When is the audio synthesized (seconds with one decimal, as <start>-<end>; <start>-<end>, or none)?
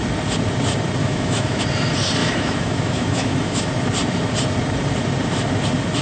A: 1.0-1.6; 2.2-3.7